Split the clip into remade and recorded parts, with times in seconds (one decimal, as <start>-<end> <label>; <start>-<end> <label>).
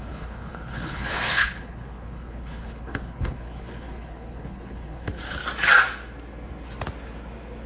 0.0-5.4 remade; 5.4-7.7 recorded